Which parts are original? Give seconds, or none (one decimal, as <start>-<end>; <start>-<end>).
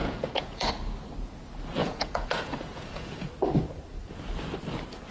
0.7-1.8; 3.3-5.1